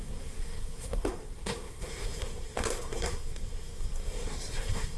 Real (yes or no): no